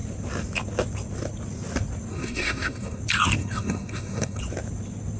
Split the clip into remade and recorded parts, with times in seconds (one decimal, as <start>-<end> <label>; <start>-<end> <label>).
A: 0.0-2.1 recorded; 2.1-3.0 remade; 3.0-3.4 recorded; 3.4-4.4 remade; 4.4-5.2 recorded